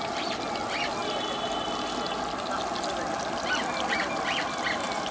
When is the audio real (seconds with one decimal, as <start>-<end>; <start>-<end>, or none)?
0.0-5.1